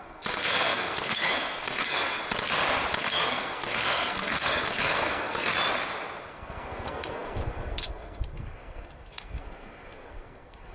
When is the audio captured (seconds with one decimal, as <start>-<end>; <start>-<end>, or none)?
2.2-3.0; 5.5-6.3

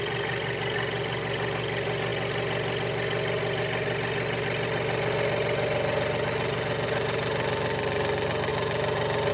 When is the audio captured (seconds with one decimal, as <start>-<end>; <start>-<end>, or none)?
0.0-9.3

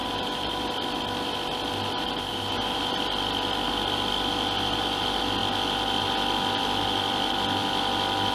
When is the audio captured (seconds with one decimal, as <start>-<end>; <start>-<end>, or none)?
0.7-2.3; 2.9-8.3

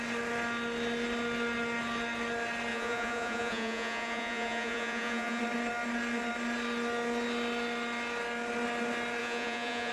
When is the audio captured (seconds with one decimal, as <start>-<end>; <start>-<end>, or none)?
0.0-2.7; 5.4-9.2

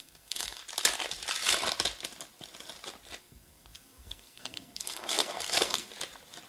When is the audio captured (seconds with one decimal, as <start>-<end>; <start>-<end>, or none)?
0.6-3.2; 5.9-6.5

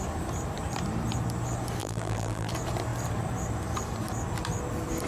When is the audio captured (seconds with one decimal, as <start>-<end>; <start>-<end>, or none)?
0.0-1.8; 2.5-5.1

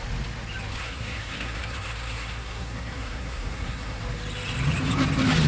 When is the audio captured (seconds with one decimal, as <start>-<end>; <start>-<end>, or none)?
0.0-0.7; 4.0-5.5

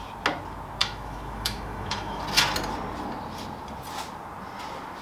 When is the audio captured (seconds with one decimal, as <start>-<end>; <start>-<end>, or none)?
0.0-0.8; 2.2-5.0